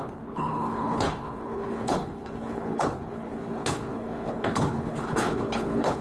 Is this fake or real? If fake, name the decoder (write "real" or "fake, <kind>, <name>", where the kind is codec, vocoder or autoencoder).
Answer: fake, codec, HILCodec